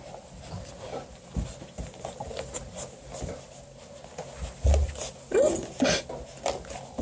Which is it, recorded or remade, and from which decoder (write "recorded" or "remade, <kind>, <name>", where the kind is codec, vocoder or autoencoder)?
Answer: recorded